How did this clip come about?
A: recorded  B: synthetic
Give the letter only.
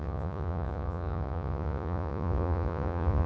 B